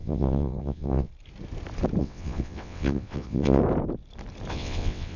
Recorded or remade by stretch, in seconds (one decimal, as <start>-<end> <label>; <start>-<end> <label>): 0.0-1.1 remade; 1.1-2.0 recorded; 2.0-3.6 remade; 3.6-4.5 recorded; 4.5-5.2 remade